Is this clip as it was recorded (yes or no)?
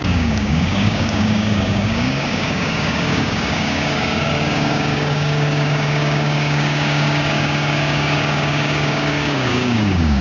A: no